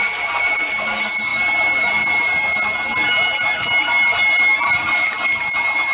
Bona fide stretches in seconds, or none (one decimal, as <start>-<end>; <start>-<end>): 0.0-5.9